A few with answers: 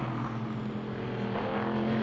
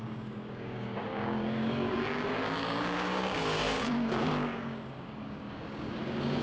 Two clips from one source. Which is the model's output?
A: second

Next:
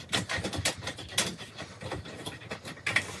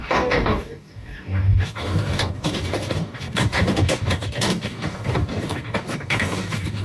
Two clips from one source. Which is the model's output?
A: second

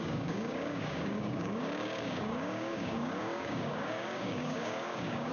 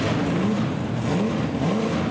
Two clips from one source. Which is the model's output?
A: first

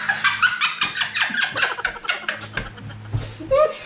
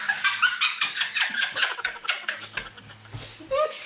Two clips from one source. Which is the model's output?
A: second